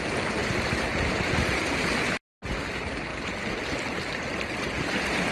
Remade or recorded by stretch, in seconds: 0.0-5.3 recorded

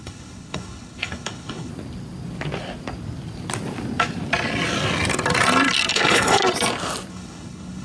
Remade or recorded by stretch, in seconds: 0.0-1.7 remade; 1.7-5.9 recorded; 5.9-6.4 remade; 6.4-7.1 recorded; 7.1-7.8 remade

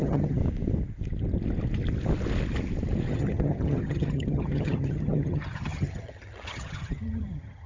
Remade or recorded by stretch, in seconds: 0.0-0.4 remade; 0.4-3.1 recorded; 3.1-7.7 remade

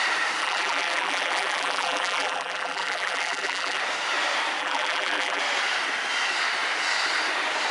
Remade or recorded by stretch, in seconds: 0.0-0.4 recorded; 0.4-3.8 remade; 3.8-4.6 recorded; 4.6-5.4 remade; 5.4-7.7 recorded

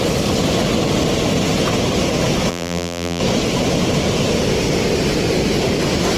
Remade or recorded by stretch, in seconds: 0.0-2.5 recorded; 2.5-3.2 remade; 3.2-6.2 recorded

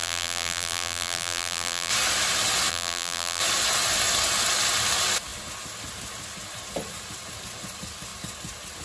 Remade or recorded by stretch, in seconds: 0.0-1.9 remade; 1.9-2.7 recorded; 2.7-3.4 remade; 3.4-8.8 recorded